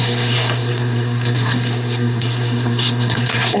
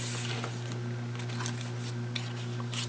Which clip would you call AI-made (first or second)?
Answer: first